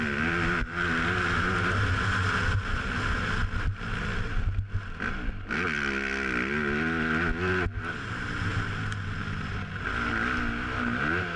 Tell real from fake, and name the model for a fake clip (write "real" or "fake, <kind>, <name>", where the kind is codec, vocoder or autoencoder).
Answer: real